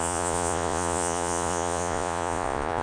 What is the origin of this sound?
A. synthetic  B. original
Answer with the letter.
A